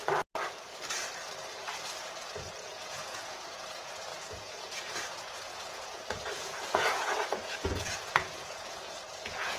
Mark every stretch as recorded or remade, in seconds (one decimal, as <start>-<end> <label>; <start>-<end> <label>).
0.0-2.0 recorded; 2.0-9.6 remade